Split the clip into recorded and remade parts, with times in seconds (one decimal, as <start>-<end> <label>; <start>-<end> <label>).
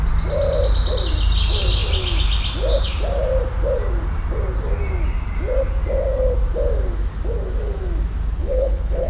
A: 0.0-8.4 recorded; 8.4-9.1 remade